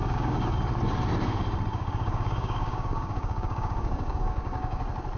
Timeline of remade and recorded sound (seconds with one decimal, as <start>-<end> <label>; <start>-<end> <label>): 0.0-0.7 remade; 0.7-1.7 recorded; 1.7-4.8 remade; 4.8-5.2 recorded